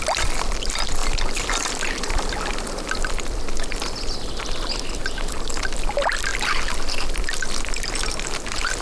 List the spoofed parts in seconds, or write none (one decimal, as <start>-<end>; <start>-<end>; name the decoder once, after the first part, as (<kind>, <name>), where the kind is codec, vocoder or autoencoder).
1.0-3.1 (vocoder, BigVGAN v2)